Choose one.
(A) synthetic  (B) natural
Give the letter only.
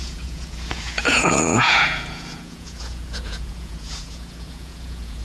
A